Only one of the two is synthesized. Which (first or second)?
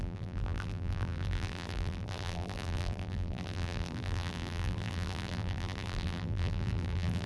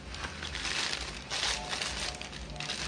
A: first